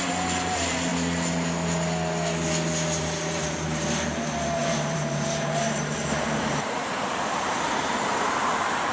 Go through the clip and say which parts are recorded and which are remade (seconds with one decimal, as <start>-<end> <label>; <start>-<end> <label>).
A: 0.0-0.9 remade; 0.9-3.0 recorded; 3.0-8.9 remade